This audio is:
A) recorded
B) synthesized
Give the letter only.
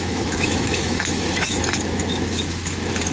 B